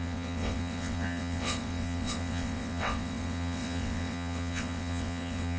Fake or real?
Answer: fake